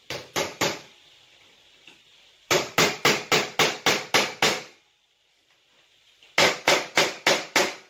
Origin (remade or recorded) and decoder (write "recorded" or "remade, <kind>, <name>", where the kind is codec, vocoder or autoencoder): recorded